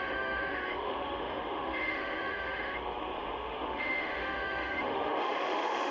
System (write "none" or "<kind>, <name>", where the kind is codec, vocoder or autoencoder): autoencoder, DAC-VAE